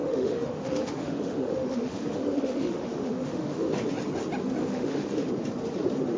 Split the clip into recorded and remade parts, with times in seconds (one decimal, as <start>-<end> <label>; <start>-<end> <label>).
0.0-3.7 remade; 3.7-4.6 recorded; 4.6-5.3 remade; 5.3-6.2 recorded